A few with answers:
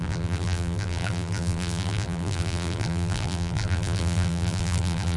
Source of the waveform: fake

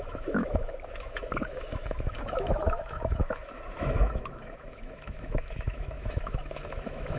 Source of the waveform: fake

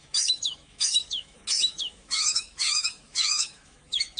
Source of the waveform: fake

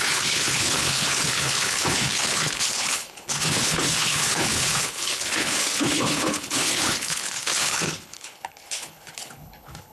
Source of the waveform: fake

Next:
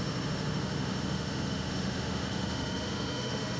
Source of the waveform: fake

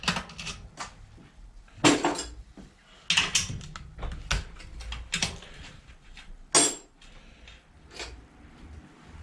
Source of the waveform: real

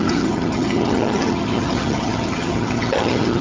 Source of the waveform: fake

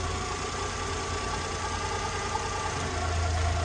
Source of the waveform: real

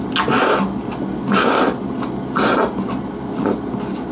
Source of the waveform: real